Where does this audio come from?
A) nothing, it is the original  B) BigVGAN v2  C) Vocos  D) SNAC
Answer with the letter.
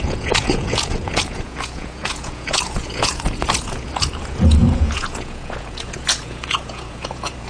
C